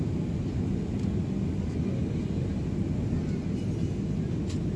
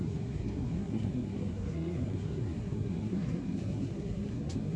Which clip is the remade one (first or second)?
second